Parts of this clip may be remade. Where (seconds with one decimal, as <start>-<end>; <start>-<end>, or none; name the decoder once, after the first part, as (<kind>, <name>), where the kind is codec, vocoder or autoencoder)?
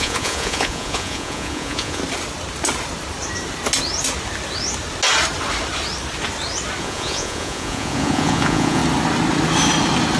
0.0-2.0 (vocoder, Vocos); 6.8-8.8